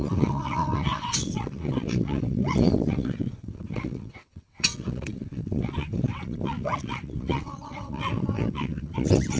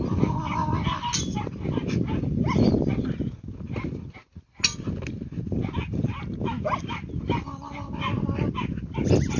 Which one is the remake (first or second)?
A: first